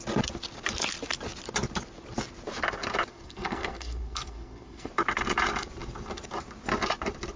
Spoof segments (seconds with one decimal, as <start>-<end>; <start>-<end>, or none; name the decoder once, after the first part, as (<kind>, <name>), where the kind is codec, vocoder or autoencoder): 3.1-4.9 (codec, SNAC)